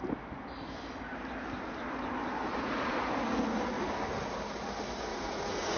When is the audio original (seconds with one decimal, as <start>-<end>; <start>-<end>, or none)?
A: 0.0-2.5; 3.1-5.1